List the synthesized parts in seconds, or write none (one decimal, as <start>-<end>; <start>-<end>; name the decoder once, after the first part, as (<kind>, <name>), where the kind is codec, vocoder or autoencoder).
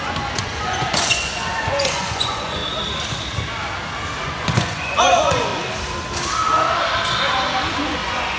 0.0-2.6 (vocoder, Vocos); 4.2-5.5; 7.7-8.4